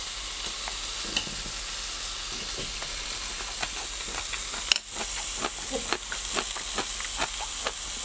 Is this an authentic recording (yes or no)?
yes